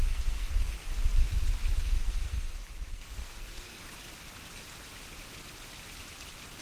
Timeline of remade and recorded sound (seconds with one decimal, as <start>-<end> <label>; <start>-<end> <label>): 0.0-0.9 remade; 0.9-1.8 recorded; 1.8-3.8 remade; 3.8-6.6 recorded